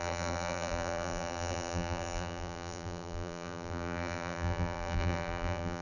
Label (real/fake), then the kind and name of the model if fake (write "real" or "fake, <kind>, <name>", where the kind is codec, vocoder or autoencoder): fake, vocoder, BigVGAN v2